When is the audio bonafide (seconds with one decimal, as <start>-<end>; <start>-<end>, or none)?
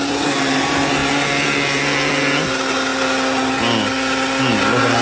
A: 0.0-5.0